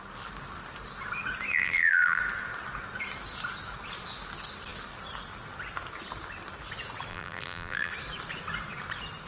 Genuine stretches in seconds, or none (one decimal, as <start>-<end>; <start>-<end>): 0.0-1.5; 2.2-7.1; 7.9-9.3